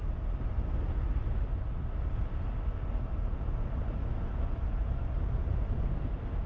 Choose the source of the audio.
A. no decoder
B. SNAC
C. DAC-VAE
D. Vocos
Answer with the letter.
A